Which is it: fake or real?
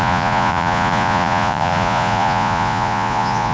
fake